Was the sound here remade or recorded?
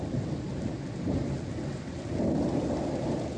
recorded